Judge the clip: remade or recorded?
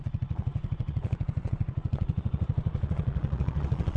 remade